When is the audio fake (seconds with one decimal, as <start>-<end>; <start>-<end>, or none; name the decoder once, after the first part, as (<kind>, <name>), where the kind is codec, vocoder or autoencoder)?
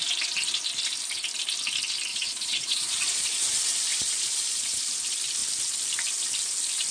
2.1-3.4 (vocoder, Vocos); 3.9-4.8